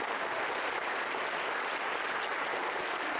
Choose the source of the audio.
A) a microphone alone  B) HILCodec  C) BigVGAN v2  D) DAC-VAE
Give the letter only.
A